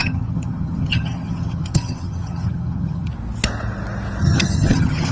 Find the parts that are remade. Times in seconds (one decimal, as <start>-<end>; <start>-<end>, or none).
0.0-3.1; 4.2-5.1